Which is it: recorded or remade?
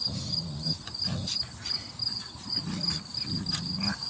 recorded